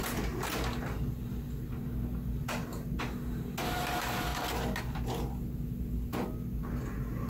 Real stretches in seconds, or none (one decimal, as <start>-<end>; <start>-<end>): 0.0-7.3